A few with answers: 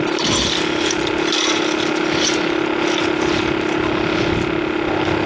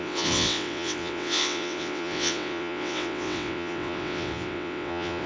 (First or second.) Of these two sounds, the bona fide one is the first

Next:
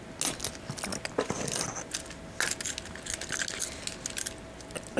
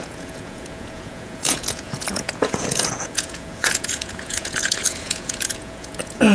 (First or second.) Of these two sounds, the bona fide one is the first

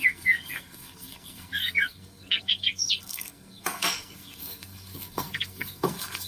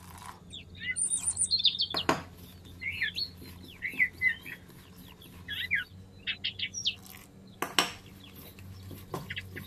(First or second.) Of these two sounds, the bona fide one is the second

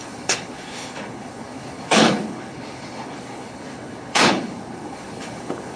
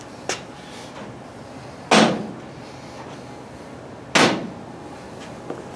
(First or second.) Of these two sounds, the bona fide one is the second